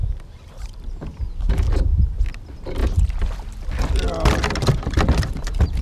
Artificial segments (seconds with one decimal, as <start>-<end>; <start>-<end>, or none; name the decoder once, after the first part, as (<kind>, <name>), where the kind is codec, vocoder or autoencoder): 0.0-1.2 (vocoder, BigVGAN v2)